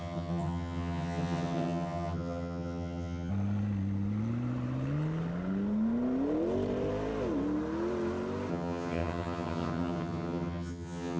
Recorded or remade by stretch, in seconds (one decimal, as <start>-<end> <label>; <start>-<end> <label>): 0.0-3.3 remade; 3.3-8.5 recorded; 8.5-11.2 remade